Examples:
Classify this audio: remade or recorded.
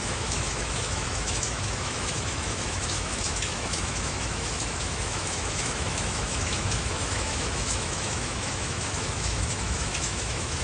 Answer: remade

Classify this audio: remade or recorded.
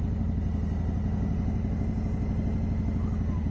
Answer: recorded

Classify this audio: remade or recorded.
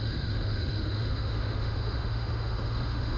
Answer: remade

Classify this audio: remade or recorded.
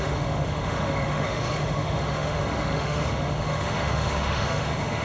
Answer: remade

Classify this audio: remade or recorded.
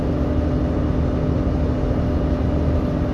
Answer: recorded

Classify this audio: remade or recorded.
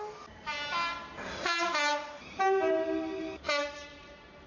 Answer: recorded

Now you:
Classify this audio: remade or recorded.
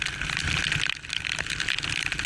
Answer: recorded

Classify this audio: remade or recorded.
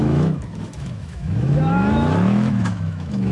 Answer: remade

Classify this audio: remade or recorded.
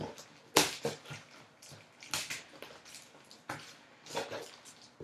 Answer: recorded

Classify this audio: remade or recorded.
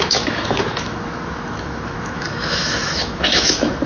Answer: remade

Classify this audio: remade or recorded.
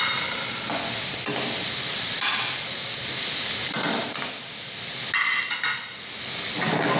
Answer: recorded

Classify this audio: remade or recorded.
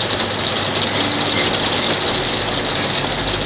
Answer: recorded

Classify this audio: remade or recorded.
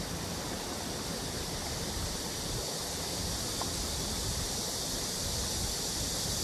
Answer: recorded